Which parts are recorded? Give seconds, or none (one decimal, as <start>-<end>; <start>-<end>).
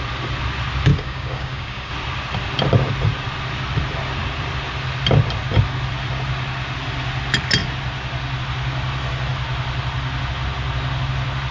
0.0-0.9; 1.9-11.5